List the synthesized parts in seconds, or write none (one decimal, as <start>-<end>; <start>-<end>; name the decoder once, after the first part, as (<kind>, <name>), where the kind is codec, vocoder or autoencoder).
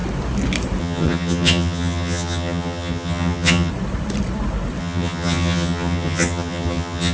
0.8-3.7 (vocoder, HiFi-GAN); 4.8-7.1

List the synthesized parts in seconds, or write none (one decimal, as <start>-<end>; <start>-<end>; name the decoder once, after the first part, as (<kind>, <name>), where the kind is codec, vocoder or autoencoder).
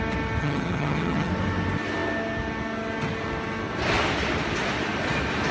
0.4-1.3 (vocoder, HiFi-GAN)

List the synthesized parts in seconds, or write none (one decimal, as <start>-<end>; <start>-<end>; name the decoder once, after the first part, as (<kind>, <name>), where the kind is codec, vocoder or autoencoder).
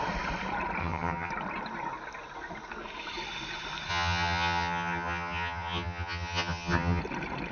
0.8-1.3 (vocoder, HiFi-GAN); 3.9-7.0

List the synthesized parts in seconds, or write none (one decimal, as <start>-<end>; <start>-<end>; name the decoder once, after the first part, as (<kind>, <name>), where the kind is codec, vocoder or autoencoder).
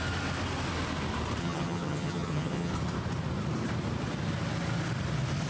1.4-2.7 (vocoder, HiFi-GAN)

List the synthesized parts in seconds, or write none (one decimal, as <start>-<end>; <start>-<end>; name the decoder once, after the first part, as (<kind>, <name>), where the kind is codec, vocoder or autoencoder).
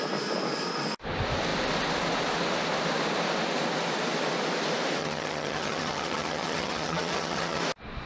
5.0-7.6 (vocoder, HiFi-GAN)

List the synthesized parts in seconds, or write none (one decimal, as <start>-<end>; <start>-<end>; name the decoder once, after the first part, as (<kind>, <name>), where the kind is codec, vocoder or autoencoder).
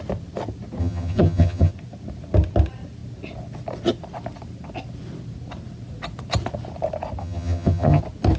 0.8-1.7 (vocoder, HiFi-GAN); 7.2-8.0